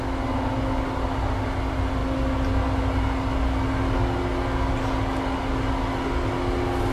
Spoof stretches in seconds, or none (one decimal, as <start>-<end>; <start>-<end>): none